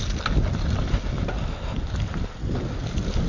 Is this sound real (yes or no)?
yes